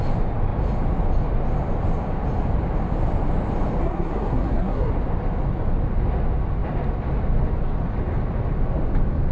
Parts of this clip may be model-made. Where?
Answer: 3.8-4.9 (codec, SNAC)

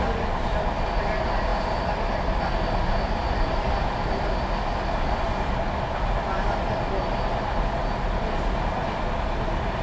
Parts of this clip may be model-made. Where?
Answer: none

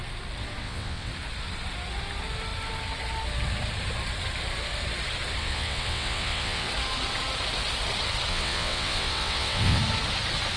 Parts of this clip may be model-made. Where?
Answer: 0.6-1.1 (vocoder, WaveNeXt); 5.4-6.7; 8.3-9.8

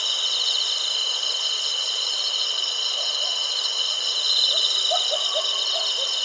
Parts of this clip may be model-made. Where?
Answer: 1.7-4.8 (vocoder, Vocos)

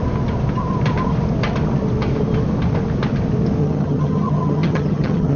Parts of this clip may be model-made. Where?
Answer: 3.6-5.4 (vocoder, HiFi-GAN)

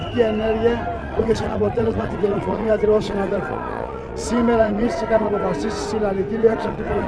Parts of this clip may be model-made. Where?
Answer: 1.0-5.3 (vocoder, Vocos); 6.4-7.1